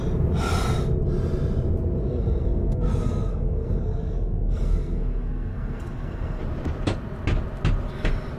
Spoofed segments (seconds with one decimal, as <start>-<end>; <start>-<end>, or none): 2.1-6.4